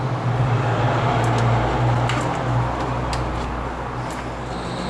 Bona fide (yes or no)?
yes